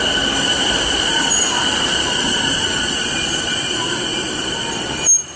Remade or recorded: recorded